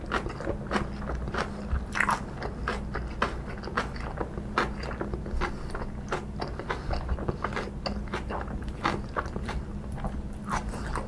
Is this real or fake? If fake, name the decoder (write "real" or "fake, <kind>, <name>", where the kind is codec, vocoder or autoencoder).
real